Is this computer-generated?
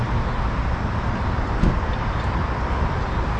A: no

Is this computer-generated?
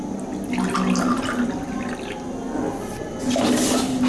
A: no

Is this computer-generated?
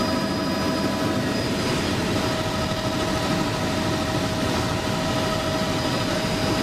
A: no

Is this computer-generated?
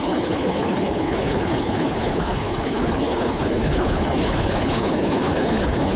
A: yes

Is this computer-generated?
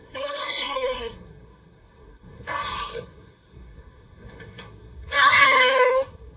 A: yes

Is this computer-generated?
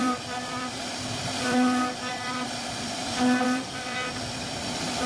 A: yes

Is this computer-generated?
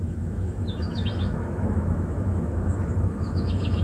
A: yes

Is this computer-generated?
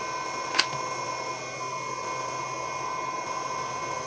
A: no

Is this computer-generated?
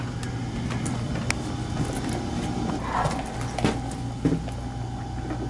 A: no